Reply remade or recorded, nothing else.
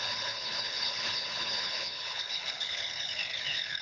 remade